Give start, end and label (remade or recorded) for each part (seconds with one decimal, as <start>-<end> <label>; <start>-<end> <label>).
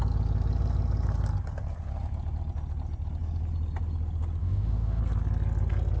0.0-4.4 recorded; 4.4-5.0 remade; 5.0-6.0 recorded